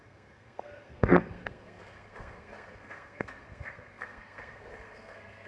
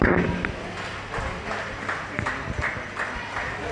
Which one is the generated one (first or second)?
first